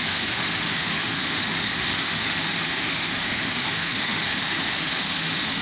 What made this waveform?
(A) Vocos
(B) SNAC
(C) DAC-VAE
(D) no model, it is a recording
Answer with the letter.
C